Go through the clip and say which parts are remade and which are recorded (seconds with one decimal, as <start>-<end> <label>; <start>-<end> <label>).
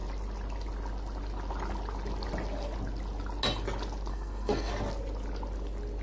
0.0-4.1 recorded; 4.1-4.7 remade; 4.7-6.0 recorded